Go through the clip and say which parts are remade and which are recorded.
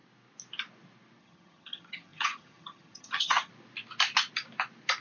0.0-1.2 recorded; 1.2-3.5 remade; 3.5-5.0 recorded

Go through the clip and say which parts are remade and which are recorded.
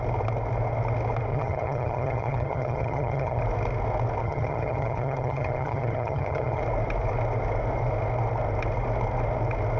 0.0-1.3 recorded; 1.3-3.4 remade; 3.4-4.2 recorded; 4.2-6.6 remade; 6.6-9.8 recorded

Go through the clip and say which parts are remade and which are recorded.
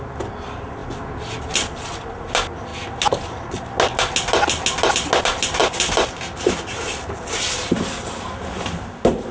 0.0-9.3 recorded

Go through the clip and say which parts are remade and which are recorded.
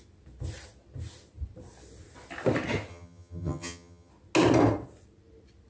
0.0-2.9 recorded; 2.9-4.1 remade; 4.1-5.7 recorded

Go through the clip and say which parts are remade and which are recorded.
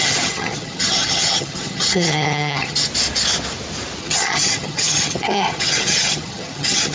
0.0-2.9 remade; 2.9-4.0 recorded; 4.0-6.9 remade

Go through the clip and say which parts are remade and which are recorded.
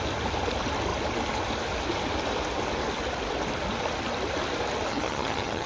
0.0-4.9 recorded; 4.9-5.7 remade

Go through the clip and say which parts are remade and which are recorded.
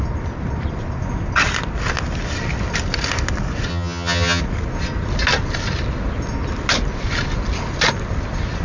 0.0-3.7 recorded; 3.7-4.4 remade; 4.4-8.6 recorded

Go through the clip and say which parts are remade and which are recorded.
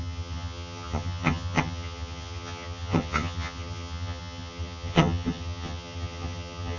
0.0-6.8 remade